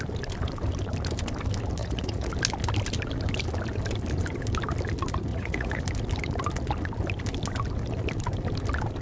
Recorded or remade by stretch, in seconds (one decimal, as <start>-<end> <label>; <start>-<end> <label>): 0.0-1.8 recorded; 1.8-2.3 remade; 2.3-5.3 recorded; 5.3-5.8 remade; 5.8-9.0 recorded